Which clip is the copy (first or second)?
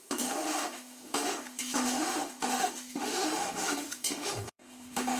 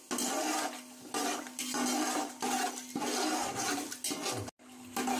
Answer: first